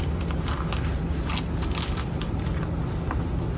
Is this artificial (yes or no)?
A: no